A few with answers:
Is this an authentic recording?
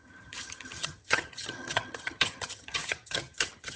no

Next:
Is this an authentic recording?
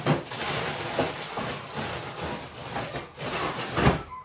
yes